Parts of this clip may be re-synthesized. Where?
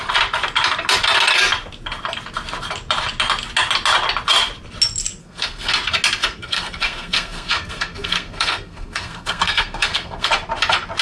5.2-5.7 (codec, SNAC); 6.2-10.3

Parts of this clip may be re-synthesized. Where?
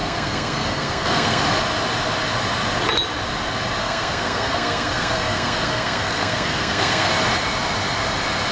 0.0-1.4 (codec, SNAC); 3.8-7.1